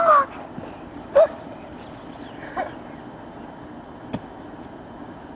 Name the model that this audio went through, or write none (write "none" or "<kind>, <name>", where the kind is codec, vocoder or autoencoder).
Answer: none